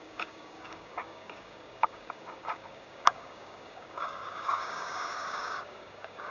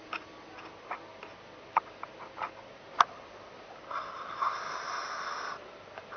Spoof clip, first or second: first